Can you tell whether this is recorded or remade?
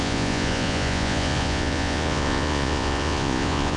remade